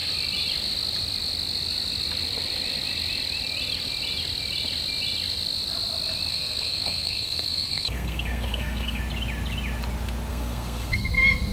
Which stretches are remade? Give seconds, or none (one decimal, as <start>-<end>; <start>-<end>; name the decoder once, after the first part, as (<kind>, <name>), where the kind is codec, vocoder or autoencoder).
6.3-9.0 (codec, SNAC); 10.3-11.0